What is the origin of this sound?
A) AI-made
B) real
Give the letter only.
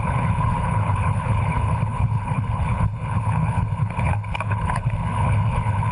A